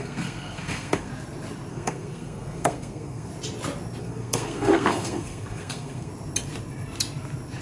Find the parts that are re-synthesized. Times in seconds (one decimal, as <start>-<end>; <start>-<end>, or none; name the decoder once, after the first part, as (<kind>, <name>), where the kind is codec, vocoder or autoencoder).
0.0-1.1 (codec, SNAC); 1.7-3.3; 4.0-6.1